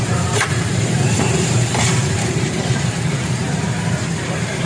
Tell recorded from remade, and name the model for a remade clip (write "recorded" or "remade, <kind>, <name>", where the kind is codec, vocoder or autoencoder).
remade, vocoder, BigVGAN v2